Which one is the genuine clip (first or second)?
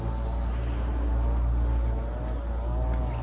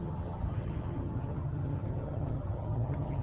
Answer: first